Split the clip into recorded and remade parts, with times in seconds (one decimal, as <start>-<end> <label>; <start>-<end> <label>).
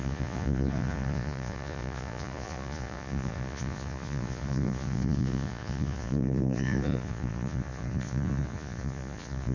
0.0-9.5 remade